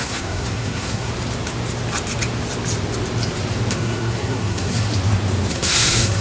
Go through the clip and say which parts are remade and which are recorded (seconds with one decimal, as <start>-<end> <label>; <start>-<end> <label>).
0.0-1.1 remade; 1.1-3.7 recorded; 3.7-4.9 remade; 4.9-5.5 recorded; 5.5-6.2 remade